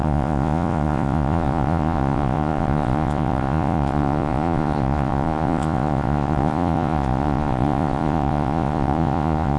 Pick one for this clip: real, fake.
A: fake